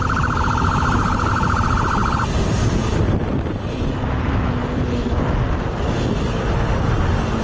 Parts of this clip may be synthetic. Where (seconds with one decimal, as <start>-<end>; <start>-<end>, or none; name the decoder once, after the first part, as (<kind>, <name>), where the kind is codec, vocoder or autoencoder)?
none